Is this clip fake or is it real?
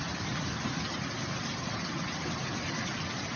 real